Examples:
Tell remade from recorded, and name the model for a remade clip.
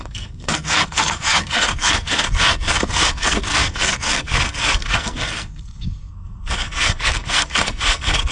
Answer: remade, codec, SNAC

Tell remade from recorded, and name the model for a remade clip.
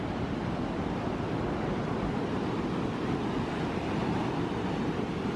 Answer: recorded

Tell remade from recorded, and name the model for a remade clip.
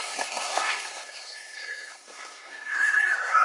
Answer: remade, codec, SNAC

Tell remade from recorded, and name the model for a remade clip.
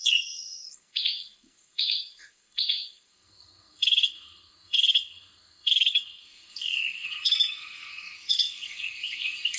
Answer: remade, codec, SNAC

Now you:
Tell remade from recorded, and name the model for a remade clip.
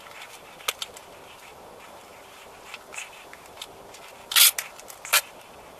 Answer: recorded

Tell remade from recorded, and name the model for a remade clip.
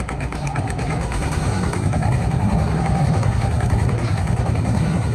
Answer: remade, codec, SNAC